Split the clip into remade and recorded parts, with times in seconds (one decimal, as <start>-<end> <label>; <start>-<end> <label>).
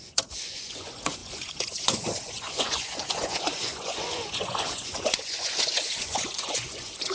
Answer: 0.0-7.1 remade